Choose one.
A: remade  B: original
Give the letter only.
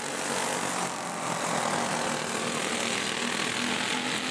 B